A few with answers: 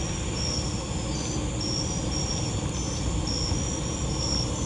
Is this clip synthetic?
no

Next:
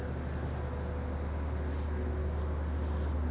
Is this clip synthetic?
no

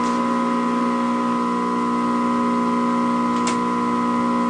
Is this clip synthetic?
no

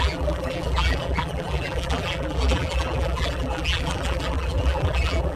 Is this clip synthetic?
yes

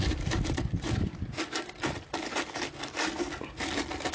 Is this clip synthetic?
no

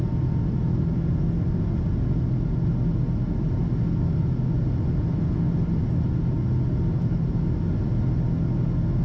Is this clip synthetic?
no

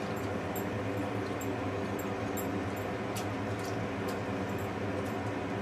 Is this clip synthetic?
no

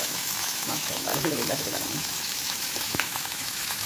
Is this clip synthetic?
yes